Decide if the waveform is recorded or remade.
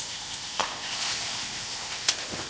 remade